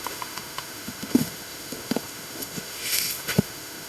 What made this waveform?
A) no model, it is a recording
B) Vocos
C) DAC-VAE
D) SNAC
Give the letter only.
C